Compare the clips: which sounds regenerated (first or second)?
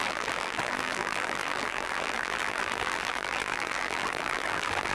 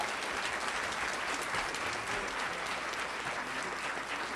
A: first